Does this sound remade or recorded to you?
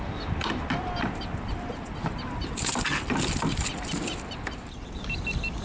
recorded